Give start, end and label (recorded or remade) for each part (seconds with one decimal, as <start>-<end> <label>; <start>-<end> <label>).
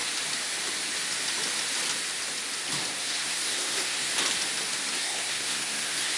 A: 0.0-3.0 recorded; 3.0-4.1 remade; 4.1-4.9 recorded; 4.9-6.2 remade